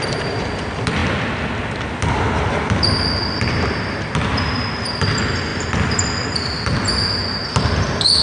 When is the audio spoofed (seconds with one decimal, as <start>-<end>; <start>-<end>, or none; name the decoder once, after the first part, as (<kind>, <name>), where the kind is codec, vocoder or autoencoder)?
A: none